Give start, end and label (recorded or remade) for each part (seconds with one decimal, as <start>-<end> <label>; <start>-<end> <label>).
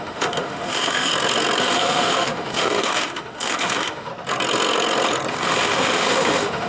0.0-1.1 remade; 1.1-1.6 recorded; 1.6-4.1 remade; 4.1-5.3 recorded; 5.3-6.7 remade